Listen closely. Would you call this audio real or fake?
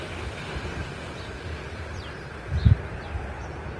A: real